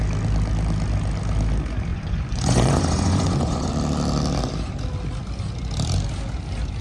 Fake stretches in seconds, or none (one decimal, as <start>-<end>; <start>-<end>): 1.9-3.7